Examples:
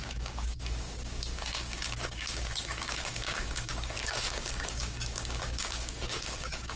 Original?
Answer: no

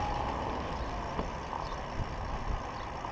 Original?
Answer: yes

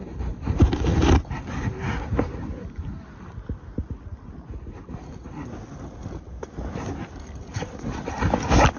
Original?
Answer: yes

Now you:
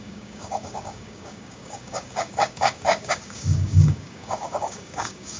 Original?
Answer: no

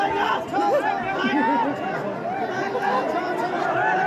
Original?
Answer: yes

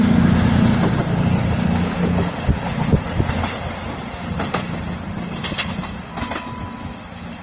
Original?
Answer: yes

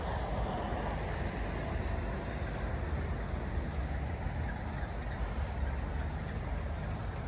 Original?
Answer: yes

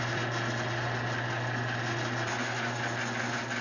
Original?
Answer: yes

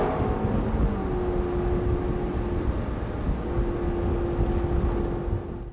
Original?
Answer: yes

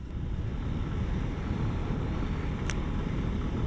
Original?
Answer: yes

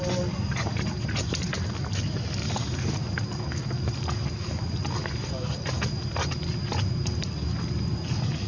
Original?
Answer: yes